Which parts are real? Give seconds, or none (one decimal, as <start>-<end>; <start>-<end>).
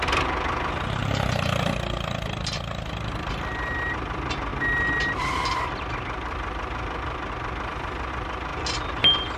0.0-9.4